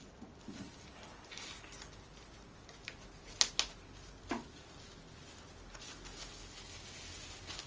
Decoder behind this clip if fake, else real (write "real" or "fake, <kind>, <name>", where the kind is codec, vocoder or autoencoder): real